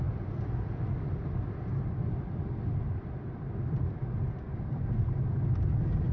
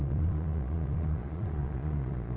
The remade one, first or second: second